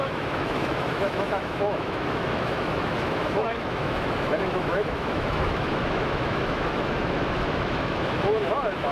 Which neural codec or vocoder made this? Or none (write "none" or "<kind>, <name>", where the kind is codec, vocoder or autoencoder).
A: autoencoder, DAC-VAE